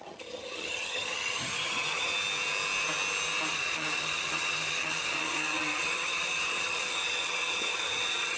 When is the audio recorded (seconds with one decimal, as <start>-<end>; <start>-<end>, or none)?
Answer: 2.1-3.5